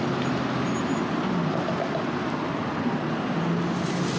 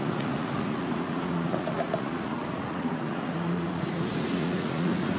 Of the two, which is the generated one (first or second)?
second